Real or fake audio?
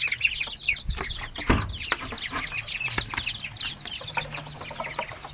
real